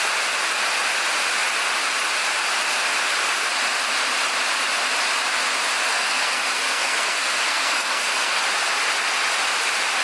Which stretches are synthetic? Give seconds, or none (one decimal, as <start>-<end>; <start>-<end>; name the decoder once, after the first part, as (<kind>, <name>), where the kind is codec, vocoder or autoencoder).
5.9-8.4 (codec, SNAC)

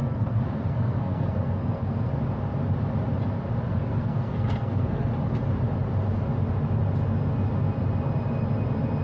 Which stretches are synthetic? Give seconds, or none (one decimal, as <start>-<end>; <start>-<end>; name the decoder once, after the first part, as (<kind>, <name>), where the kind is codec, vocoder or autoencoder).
0.0-2.1 (codec, SNAC); 3.7-5.1

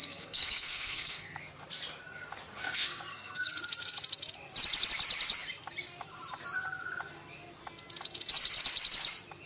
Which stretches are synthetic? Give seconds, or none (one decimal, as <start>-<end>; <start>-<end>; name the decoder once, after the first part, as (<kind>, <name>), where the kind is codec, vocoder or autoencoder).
0.0-1.4 (codec, SNAC); 2.6-3.5

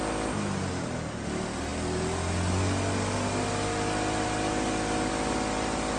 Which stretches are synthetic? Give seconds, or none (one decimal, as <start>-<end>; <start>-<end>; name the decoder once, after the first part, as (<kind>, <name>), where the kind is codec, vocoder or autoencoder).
none

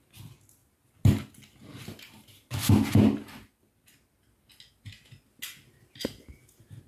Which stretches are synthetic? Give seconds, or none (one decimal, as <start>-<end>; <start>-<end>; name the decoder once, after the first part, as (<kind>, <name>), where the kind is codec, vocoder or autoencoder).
none

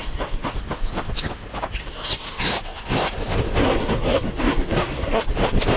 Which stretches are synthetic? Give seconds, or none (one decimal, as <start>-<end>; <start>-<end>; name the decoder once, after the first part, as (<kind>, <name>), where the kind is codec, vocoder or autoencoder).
0.0-0.5 (codec, SNAC); 1.8-2.4; 3.6-5.3